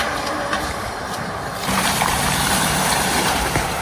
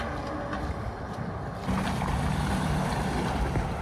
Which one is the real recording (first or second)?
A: second